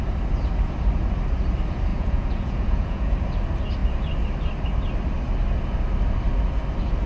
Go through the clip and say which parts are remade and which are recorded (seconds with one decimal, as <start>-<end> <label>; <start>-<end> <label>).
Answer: 0.0-1.9 recorded; 1.9-3.1 remade; 3.1-7.1 recorded